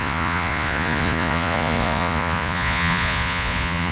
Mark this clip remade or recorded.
remade